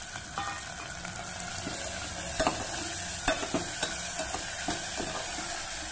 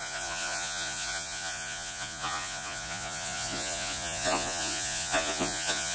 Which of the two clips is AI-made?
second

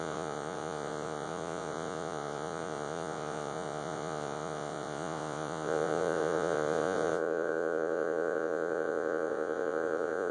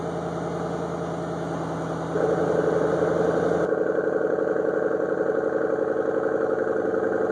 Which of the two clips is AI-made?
first